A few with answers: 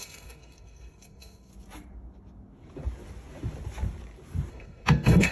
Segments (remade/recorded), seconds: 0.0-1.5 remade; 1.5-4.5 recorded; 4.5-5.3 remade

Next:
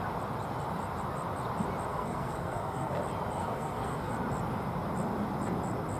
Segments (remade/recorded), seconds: 0.0-1.9 recorded; 1.9-3.0 remade; 3.0-3.4 recorded; 3.4-4.1 remade; 4.1-6.0 recorded

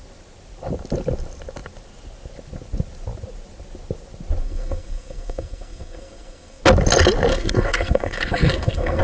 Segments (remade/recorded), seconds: 0.0-4.4 recorded; 4.4-6.6 remade; 6.6-7.3 recorded; 7.3-9.0 remade

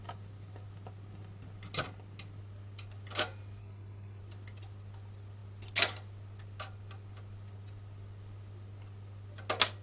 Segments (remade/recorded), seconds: 0.0-3.6 recorded; 3.6-4.2 remade; 4.2-9.8 recorded